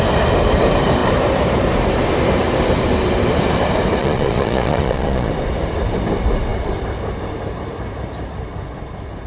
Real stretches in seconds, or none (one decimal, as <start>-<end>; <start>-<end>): 0.0-4.0; 5.3-9.3